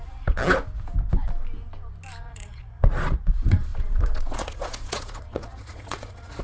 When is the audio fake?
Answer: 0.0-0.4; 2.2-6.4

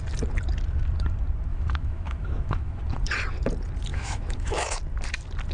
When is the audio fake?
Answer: 1.5-2.8; 3.9-4.8

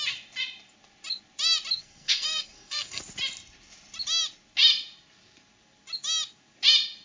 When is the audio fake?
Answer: 1.8-3.0